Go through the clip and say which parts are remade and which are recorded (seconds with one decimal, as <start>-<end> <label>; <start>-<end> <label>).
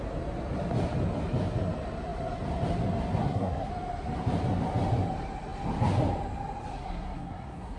0.0-3.2 recorded; 3.2-3.7 remade; 3.7-6.7 recorded; 6.7-7.8 remade